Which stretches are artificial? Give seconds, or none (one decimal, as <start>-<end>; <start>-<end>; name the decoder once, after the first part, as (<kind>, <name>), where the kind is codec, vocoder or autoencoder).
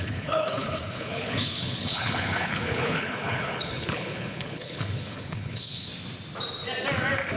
0.0-5.9 (codec, HILCodec)